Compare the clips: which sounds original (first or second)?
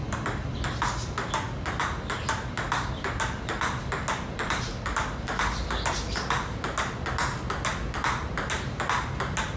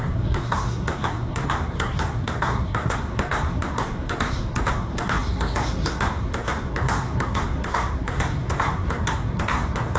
first